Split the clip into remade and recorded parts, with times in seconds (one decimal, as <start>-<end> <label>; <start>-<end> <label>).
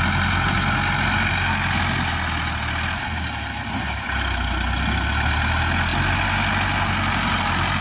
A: 0.0-7.8 recorded